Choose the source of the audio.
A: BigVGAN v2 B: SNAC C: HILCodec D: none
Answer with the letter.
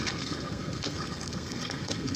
B